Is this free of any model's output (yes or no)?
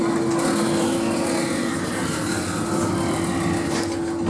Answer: yes